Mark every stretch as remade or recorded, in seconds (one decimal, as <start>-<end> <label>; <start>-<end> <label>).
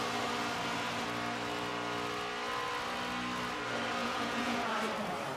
0.0-4.0 recorded; 4.0-4.7 remade; 4.7-5.4 recorded